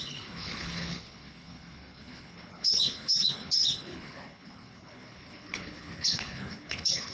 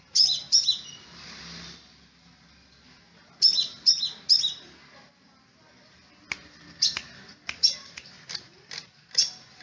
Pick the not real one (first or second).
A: first